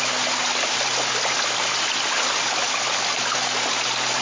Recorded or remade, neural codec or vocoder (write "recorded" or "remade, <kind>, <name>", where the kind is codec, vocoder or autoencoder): recorded